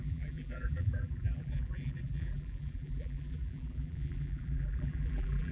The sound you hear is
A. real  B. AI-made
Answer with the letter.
B